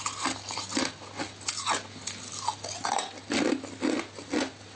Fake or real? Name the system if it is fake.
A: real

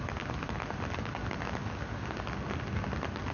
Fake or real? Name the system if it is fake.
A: real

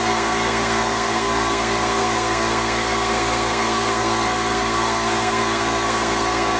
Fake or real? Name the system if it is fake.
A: fake, codec, SNAC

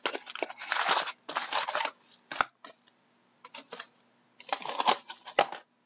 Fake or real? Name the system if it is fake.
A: real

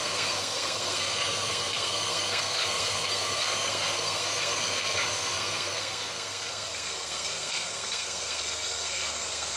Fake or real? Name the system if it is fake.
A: fake, codec, SNAC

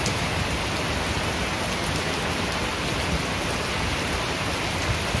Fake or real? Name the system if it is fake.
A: real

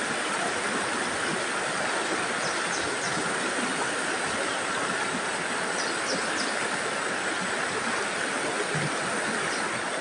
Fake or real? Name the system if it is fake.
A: real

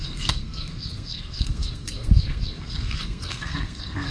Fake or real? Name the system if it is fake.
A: fake, codec, SNAC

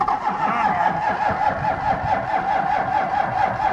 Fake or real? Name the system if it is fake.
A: real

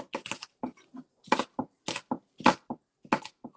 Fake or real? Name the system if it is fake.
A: real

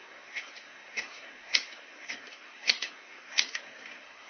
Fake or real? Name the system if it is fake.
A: fake, codec, SNAC